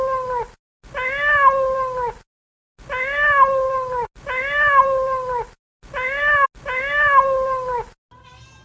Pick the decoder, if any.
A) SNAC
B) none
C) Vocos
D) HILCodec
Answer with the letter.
B